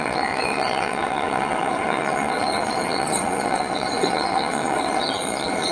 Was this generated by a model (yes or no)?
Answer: yes